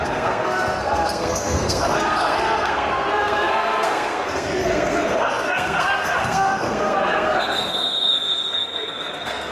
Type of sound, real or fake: fake